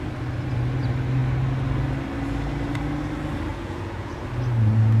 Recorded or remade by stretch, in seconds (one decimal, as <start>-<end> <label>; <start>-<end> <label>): 0.0-3.5 recorded; 3.5-4.2 remade; 4.2-5.0 recorded